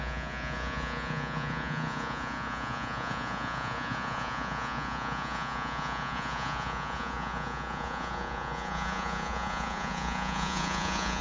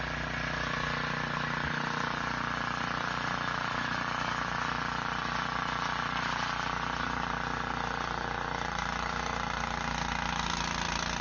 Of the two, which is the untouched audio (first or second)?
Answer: second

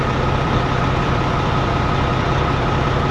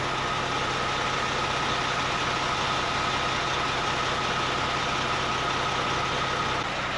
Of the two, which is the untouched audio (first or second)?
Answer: second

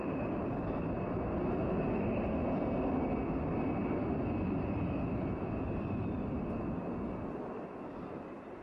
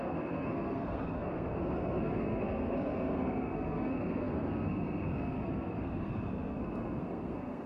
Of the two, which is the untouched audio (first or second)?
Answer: first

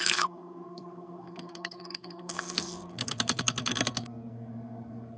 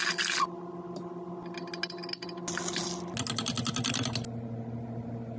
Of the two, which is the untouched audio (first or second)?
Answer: second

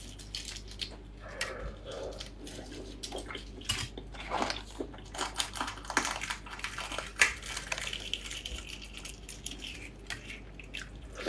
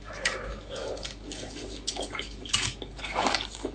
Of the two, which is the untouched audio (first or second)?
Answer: first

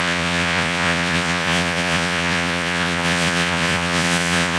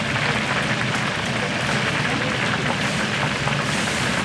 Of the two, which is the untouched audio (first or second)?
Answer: second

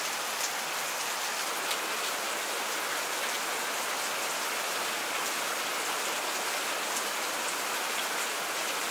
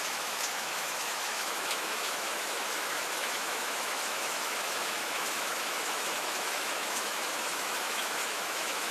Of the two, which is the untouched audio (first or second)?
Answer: first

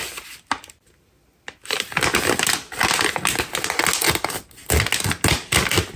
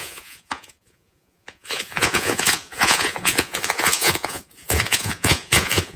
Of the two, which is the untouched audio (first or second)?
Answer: first